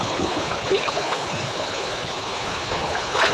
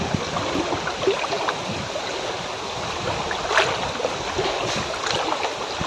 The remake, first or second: first